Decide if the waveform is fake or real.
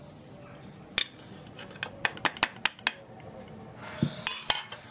real